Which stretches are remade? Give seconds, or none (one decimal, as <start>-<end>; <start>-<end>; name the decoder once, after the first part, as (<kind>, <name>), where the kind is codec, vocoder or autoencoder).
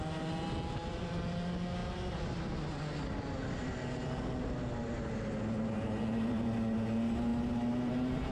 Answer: none